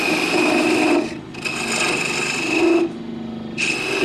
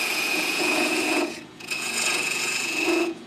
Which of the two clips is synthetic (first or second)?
second